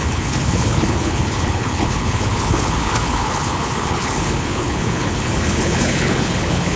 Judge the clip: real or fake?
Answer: fake